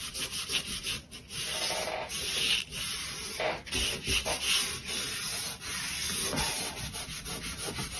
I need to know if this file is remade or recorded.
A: recorded